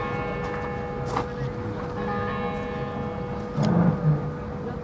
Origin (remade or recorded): recorded